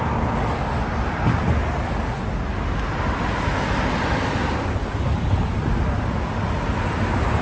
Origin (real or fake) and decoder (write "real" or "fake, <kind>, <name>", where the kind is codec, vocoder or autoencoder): real